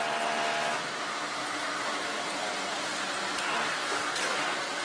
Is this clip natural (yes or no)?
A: yes